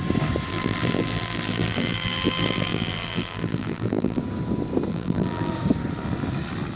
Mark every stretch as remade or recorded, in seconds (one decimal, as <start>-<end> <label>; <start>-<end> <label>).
0.0-0.5 recorded; 0.5-4.2 remade; 4.2-4.9 recorded; 4.9-5.5 remade; 5.5-6.8 recorded